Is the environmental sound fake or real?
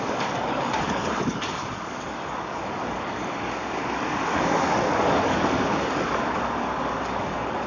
fake